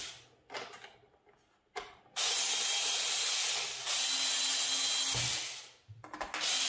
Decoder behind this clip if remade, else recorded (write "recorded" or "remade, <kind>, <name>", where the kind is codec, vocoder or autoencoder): recorded